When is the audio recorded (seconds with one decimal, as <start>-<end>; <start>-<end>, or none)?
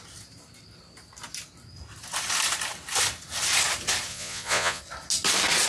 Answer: 0.0-4.1; 4.8-5.7